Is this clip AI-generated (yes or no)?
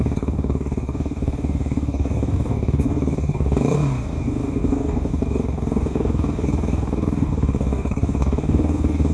yes